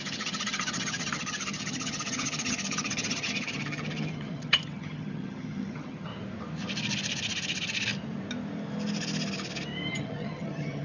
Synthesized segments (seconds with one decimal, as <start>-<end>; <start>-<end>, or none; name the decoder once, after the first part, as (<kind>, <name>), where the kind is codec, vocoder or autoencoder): 0.0-6.1 (vocoder, HiFi-GAN); 9.9-10.8